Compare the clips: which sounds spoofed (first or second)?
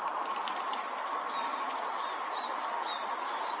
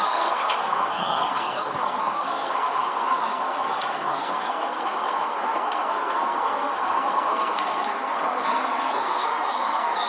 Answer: second